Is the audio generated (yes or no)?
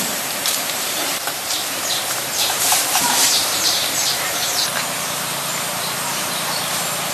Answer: yes